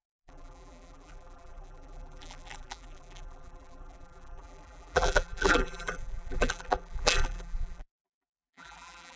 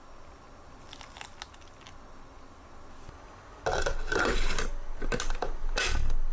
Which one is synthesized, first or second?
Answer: first